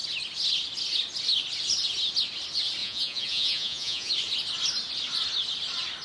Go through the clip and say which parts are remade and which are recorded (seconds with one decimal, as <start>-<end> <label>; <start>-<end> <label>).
0.0-2.8 recorded; 2.8-4.1 remade; 4.1-6.0 recorded